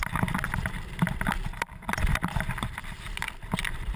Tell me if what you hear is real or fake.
fake